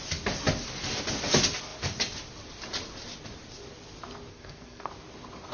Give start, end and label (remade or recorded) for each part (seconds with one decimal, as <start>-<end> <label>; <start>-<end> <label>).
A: 0.0-4.3 recorded; 4.3-4.9 remade; 4.9-5.5 recorded